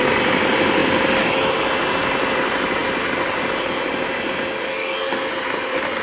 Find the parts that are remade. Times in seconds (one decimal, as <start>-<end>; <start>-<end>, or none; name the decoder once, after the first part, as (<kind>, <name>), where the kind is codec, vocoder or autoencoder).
none